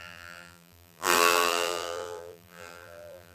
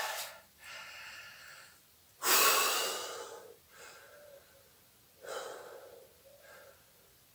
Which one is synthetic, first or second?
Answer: first